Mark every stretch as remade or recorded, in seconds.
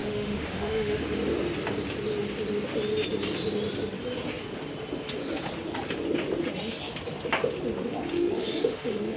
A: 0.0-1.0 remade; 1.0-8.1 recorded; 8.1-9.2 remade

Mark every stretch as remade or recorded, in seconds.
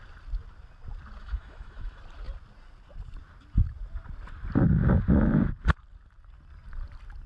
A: 0.0-1.2 recorded; 1.2-2.0 remade; 2.0-7.3 recorded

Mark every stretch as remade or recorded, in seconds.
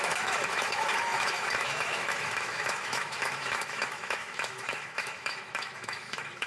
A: 0.0-6.5 remade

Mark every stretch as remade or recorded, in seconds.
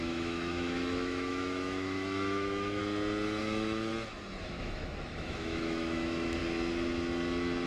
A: 0.0-2.8 remade; 2.8-3.4 recorded; 3.4-3.9 remade; 3.9-4.4 recorded; 4.4-6.4 remade; 6.4-7.7 recorded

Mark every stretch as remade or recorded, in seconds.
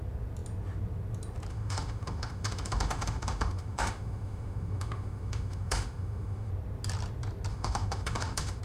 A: 0.0-1.5 recorded; 1.5-6.5 remade; 6.5-7.5 recorded; 7.5-8.6 remade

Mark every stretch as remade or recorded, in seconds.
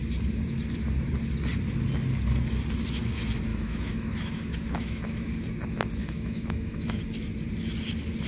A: 0.0-3.5 recorded; 3.5-5.3 remade; 5.3-6.0 recorded; 6.0-7.0 remade; 7.0-8.3 recorded